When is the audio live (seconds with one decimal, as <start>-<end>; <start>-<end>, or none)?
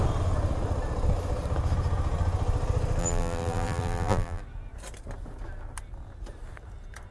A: 0.0-3.0; 4.4-7.1